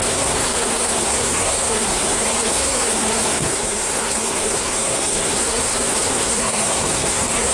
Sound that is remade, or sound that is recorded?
remade